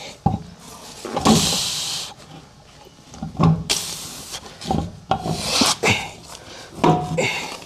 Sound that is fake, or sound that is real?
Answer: real